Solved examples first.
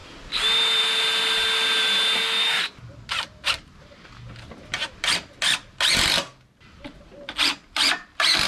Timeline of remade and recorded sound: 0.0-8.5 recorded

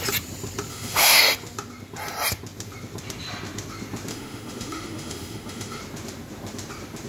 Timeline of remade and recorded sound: 0.0-0.7 recorded; 0.7-1.2 remade; 1.2-4.1 recorded; 4.1-5.8 remade; 5.8-7.1 recorded

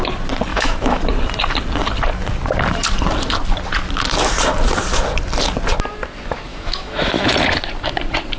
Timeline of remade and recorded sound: 0.0-0.5 recorded; 0.5-1.0 remade; 1.0-6.5 recorded; 6.5-7.3 remade; 7.3-8.4 recorded

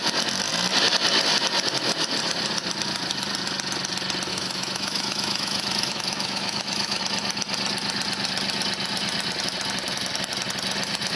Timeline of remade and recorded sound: 0.0-4.3 recorded; 4.3-7.0 remade; 7.0-11.2 recorded

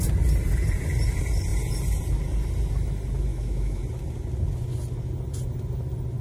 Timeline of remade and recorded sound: 0.0-3.3 recorded; 3.3-3.8 remade; 3.8-6.2 recorded

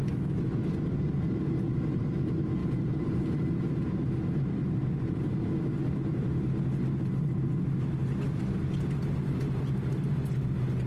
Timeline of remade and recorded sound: 0.0-0.7 remade; 0.7-10.9 recorded

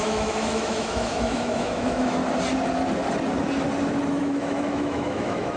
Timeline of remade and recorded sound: 0.0-2.2 remade; 2.2-4.2 recorded; 4.2-5.6 remade

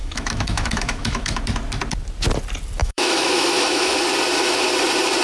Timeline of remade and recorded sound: 0.0-1.4 remade; 1.4-2.8 recorded; 2.8-4.0 remade; 4.0-5.2 recorded